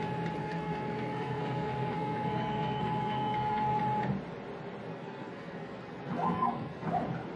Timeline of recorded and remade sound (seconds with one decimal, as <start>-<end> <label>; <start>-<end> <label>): 0.0-0.4 recorded; 0.4-3.8 remade; 3.8-4.9 recorded; 4.9-6.9 remade; 6.9-7.4 recorded